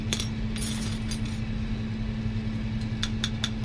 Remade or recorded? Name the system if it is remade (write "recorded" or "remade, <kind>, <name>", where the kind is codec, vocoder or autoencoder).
recorded